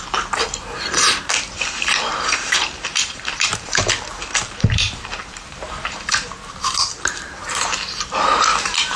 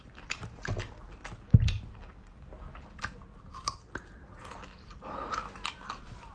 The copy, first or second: first